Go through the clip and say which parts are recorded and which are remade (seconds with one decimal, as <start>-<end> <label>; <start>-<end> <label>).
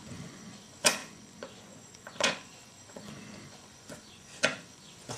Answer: 0.0-5.2 remade